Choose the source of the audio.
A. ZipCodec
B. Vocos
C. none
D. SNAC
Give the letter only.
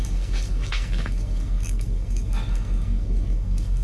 D